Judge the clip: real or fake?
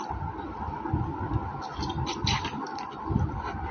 real